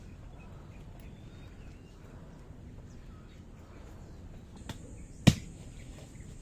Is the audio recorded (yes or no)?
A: yes